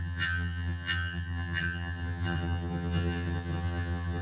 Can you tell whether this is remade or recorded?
remade